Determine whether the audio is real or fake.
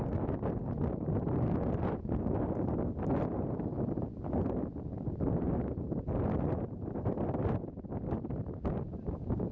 real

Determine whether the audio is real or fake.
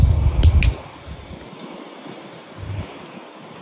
real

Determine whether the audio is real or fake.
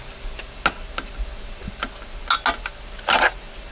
real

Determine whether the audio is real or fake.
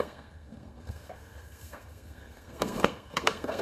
fake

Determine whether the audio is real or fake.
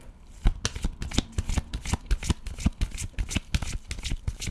real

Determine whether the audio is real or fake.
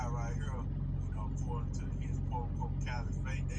real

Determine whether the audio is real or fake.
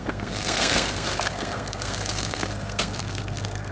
fake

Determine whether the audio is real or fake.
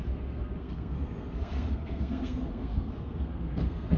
fake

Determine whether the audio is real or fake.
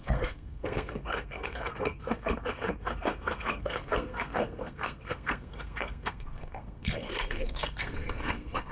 fake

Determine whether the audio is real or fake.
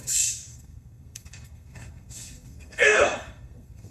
fake